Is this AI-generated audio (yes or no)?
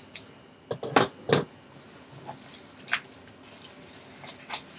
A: no